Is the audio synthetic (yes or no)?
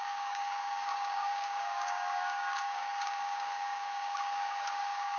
yes